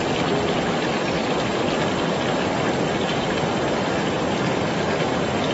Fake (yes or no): no